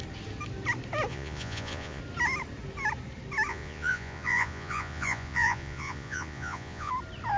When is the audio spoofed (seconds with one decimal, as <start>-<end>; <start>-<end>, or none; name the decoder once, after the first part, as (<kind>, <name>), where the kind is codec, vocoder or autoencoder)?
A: 1.1-2.0 (vocoder, Vocos); 3.5-6.9